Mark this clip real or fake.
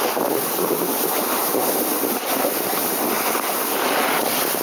real